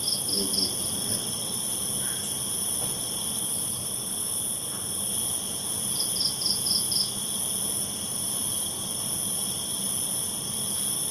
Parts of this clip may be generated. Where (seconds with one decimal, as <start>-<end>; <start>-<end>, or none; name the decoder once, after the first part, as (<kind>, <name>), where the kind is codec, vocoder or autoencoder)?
1.0-1.6 (vocoder, WaveNeXt)